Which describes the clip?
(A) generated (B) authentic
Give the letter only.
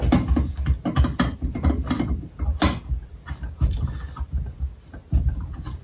B